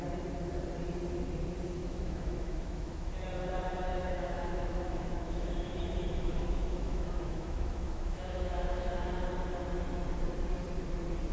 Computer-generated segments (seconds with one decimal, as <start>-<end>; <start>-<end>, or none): 1.8-3.1; 3.9-9.1